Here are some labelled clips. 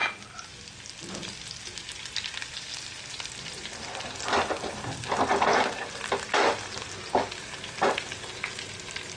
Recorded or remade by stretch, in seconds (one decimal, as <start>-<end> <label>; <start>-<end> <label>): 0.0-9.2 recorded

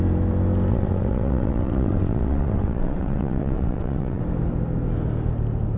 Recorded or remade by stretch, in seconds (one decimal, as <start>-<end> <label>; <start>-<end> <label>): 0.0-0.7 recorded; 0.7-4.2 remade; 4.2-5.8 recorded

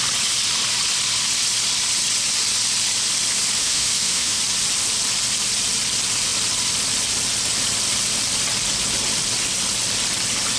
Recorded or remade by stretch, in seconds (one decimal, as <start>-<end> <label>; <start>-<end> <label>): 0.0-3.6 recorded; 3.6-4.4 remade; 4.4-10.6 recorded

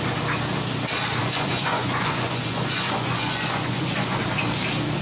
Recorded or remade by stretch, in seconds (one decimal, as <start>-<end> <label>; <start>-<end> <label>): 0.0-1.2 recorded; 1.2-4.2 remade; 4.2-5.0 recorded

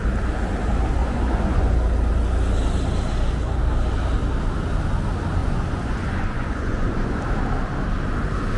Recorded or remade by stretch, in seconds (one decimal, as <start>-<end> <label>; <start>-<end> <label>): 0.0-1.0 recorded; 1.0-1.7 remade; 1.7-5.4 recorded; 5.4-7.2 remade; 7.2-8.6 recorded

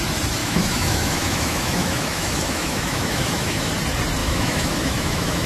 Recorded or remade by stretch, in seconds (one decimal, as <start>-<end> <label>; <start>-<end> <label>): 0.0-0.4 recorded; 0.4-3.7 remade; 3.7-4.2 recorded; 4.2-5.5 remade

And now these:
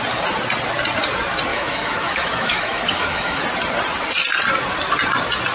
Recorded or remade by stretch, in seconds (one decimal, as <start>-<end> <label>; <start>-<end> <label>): 0.0-1.5 recorded; 1.5-3.4 remade; 3.4-5.5 recorded

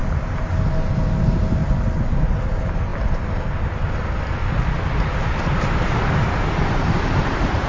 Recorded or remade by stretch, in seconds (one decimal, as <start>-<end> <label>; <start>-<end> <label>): 0.0-1.6 recorded; 1.6-2.2 remade; 2.2-2.9 recorded; 2.9-7.7 remade